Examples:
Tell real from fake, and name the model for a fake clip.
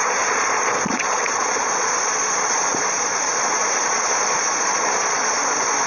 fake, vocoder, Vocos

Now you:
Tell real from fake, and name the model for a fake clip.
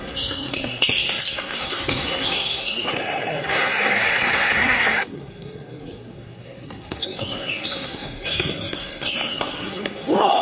fake, codec, SNAC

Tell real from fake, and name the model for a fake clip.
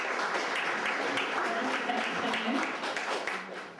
fake, vocoder, BigVGAN v2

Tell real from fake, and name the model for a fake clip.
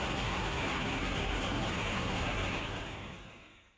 fake, codec, SNAC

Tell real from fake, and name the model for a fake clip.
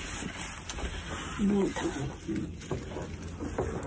real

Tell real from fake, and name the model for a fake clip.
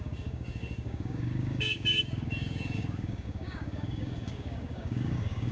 fake, codec, DAC